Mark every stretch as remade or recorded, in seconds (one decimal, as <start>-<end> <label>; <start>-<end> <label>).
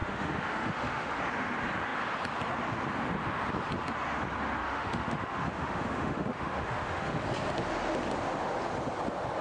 0.0-1.2 remade; 1.2-4.6 recorded; 4.6-7.2 remade; 7.2-9.4 recorded